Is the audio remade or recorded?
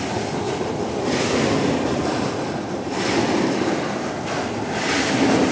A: recorded